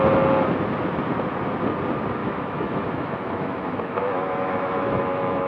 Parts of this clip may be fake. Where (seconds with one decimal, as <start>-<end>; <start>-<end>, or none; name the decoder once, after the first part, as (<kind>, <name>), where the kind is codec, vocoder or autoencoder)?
2.2-5.5 (autoencoder, DAC-VAE)